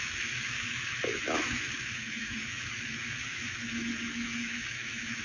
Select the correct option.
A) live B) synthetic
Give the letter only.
B